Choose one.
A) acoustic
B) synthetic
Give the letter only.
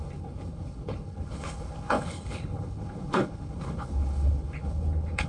B